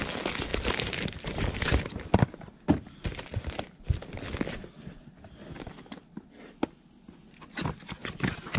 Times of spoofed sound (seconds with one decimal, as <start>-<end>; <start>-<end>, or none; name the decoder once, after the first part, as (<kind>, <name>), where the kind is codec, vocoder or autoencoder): 0.5-2.0 (vocoder, BigVGAN v2)